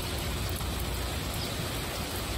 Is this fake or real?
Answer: real